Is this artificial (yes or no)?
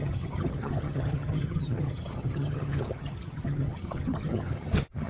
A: yes